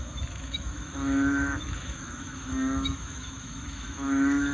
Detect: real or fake fake